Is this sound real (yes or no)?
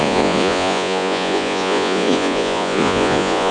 no